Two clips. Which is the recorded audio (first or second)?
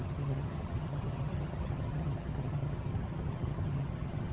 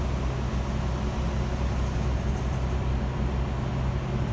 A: second